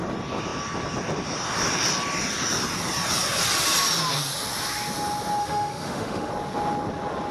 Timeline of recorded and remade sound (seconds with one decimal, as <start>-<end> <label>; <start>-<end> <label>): 0.0-5.4 recorded; 5.4-6.3 remade; 6.3-7.3 recorded